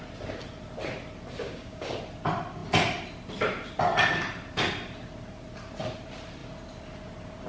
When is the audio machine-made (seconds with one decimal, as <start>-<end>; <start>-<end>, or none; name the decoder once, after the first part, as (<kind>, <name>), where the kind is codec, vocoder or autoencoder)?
1.4-2.0 (codec, DAC)